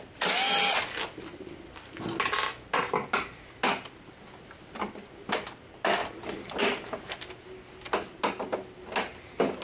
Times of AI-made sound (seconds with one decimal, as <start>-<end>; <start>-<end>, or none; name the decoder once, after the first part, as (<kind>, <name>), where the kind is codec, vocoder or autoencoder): none